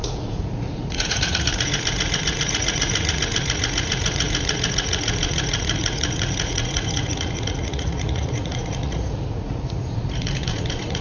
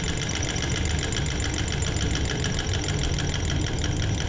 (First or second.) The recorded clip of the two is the second